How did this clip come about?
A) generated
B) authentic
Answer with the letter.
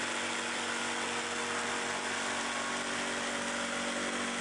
B